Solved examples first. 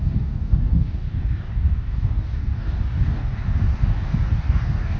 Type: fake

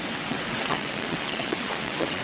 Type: fake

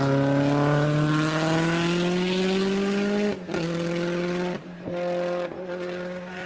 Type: real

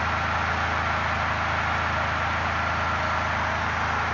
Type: real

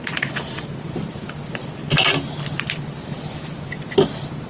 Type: real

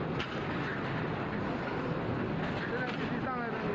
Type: real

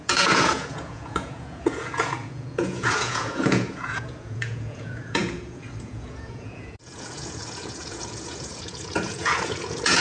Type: fake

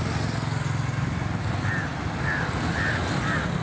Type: real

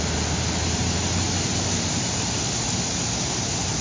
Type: real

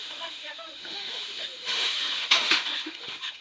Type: fake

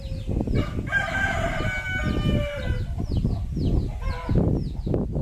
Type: real